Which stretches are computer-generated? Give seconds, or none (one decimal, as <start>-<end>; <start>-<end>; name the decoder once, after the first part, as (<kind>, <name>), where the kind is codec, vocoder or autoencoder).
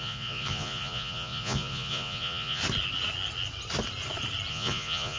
0.0-2.6 (vocoder, Vocos); 4.5-5.2